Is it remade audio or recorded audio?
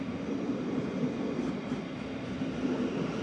recorded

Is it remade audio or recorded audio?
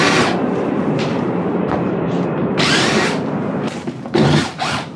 remade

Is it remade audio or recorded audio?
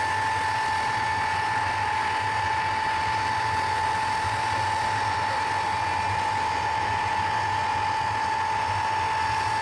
recorded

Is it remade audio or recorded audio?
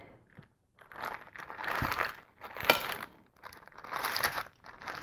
remade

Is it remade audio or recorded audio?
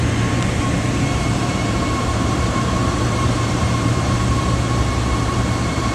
remade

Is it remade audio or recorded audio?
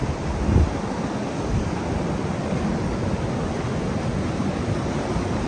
recorded